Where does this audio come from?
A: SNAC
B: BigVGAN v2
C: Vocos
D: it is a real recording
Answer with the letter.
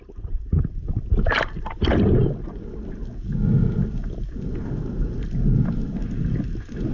D